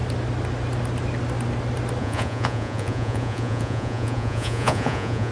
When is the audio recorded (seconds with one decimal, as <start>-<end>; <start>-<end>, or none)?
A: 0.0-2.0

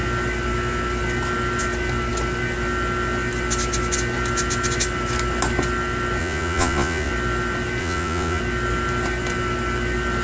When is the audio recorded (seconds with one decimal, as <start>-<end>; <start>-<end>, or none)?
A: 0.0-6.2; 7.1-7.8; 8.4-10.2

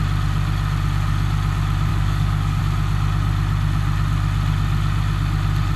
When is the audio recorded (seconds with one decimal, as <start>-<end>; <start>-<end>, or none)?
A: 0.0-1.9; 2.6-5.8

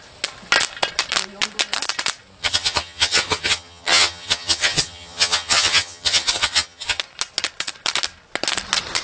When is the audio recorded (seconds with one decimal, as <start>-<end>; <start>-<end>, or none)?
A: 0.0-2.4; 7.0-9.0

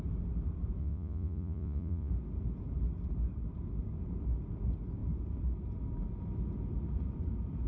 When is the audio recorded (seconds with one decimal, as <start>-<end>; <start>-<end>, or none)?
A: 0.0-0.8; 2.1-7.7

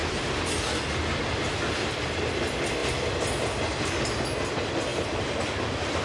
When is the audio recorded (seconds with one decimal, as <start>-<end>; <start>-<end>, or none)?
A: 0.0-4.9